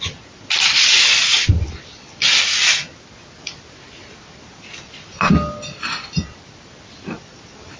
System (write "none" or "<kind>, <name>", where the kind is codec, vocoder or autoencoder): none